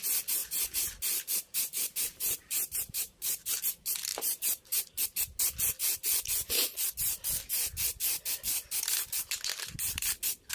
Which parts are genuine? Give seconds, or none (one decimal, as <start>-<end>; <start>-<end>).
0.0-0.4; 3.6-4.1; 4.8-10.5